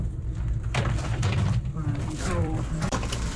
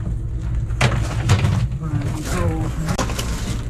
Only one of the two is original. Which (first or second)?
second